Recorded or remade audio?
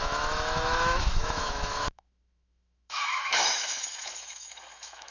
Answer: remade